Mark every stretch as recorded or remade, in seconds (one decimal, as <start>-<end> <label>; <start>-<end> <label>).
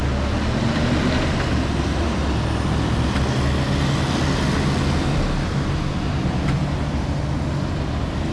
0.0-8.3 recorded